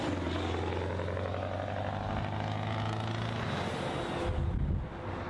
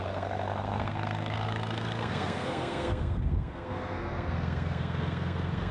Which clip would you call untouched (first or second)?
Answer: first